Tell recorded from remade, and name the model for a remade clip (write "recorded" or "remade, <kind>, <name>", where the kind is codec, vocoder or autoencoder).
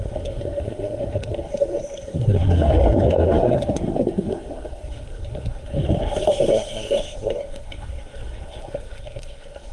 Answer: remade, codec, SNAC